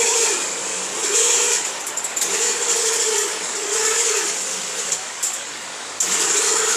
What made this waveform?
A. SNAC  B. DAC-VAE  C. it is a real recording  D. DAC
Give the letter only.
D